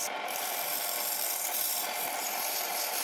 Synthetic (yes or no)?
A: yes